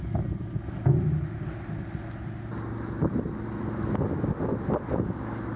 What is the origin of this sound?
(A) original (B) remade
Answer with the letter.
A